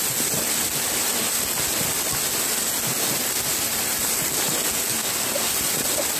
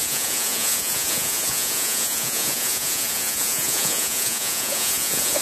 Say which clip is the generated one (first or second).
second